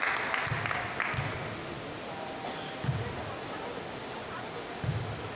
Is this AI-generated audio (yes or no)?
no